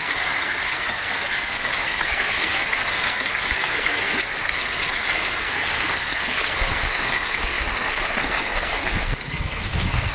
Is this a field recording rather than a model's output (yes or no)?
no